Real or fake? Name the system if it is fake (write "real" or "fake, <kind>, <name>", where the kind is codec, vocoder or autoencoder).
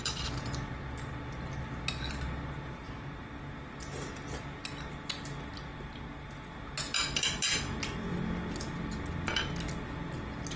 real